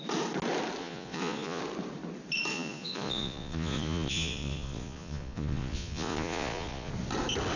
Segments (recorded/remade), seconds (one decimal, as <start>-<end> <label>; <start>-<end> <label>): 0.0-0.8 recorded; 0.8-1.6 remade; 1.6-2.5 recorded; 2.5-6.9 remade; 6.9-7.6 recorded